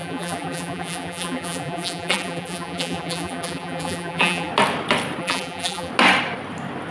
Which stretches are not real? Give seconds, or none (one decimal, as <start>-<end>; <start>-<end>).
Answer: 0.0-4.5; 5.2-5.9